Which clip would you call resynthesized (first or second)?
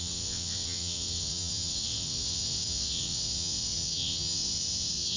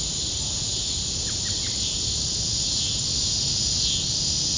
first